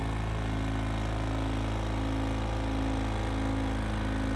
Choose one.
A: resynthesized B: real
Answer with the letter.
B